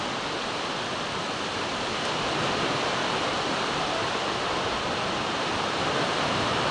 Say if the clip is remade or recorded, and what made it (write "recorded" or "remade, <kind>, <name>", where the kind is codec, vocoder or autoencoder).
recorded